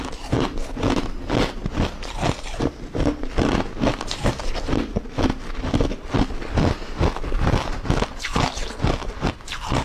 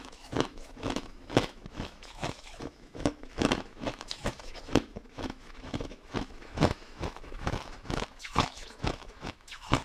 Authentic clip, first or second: first